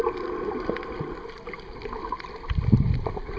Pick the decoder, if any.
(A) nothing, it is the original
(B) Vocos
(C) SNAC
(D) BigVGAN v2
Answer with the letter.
A